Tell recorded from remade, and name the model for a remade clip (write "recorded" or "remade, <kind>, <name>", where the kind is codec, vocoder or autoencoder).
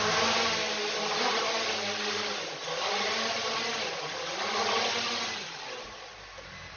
recorded